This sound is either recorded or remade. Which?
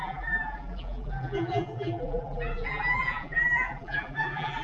remade